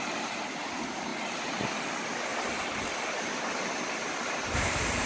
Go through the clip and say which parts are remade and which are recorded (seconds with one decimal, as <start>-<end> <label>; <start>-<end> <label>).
0.0-5.1 recorded